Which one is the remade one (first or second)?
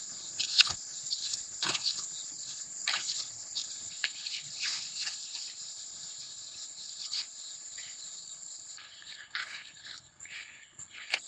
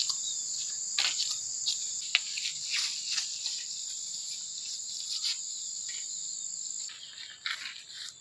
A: first